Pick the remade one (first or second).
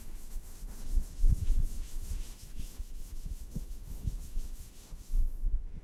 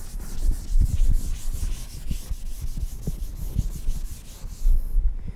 first